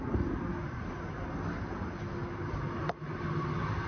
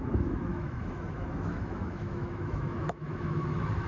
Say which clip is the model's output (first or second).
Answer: second